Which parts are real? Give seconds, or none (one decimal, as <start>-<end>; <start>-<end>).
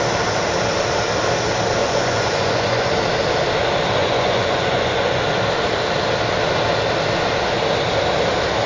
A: 0.0-1.8; 2.9-4.0; 5.2-8.7